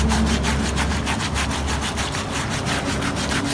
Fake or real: real